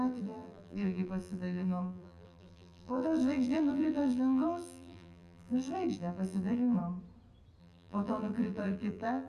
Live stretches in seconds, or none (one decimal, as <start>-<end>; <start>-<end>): 6.8-7.6